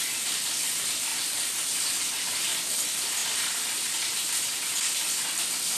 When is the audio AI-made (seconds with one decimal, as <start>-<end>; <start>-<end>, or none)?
none